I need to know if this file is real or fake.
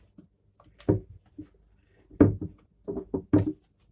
real